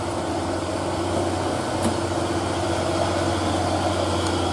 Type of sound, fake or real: real